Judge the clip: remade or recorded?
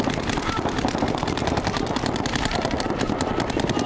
remade